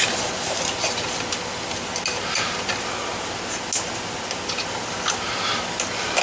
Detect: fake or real real